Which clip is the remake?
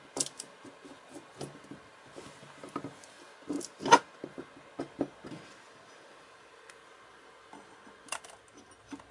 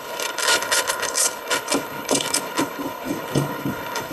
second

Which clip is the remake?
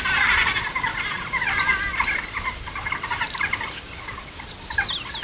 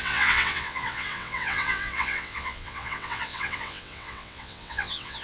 second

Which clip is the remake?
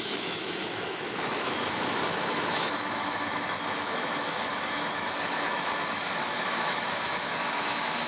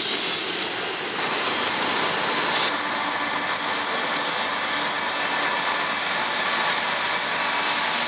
first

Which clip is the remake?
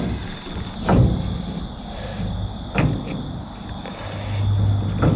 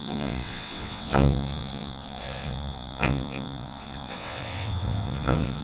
second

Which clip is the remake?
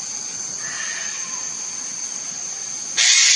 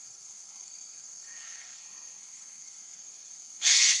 second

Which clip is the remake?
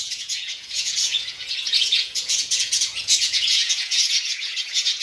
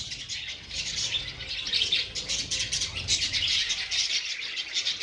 first